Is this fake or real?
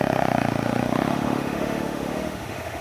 fake